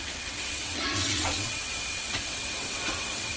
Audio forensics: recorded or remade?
remade